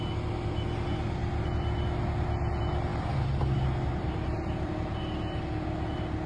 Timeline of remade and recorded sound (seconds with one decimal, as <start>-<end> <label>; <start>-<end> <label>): 0.0-1.2 recorded; 1.2-2.0 remade; 2.0-2.9 recorded; 2.9-4.7 remade; 4.7-6.3 recorded